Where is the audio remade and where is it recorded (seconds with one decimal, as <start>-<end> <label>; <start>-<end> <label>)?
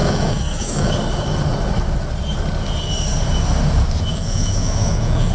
0.0-0.9 remade; 0.9-4.1 recorded; 4.1-5.3 remade